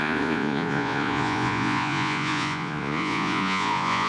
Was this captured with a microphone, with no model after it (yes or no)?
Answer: no